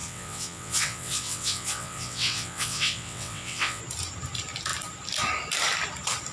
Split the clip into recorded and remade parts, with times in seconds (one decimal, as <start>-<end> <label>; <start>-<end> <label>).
0.0-3.8 remade; 3.8-6.3 recorded